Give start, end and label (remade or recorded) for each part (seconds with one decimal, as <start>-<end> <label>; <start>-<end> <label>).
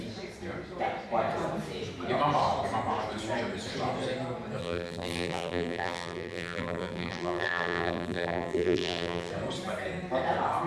0.0-4.6 recorded; 4.6-9.3 remade; 9.3-10.7 recorded